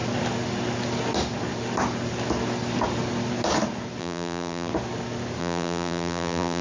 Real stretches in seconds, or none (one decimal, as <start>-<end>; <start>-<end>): 0.0-4.0; 4.7-5.4